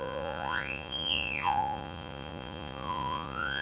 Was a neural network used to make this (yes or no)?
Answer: yes